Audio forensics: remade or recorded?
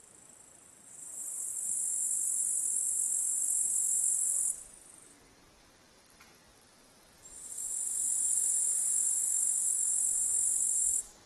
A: remade